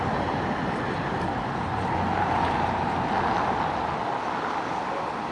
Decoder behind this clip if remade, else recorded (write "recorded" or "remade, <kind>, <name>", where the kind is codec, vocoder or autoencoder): recorded